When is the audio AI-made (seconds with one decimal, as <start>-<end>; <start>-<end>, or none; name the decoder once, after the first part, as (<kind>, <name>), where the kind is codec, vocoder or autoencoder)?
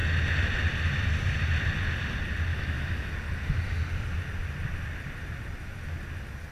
2.5-3.1 (autoencoder, DAC-VAE)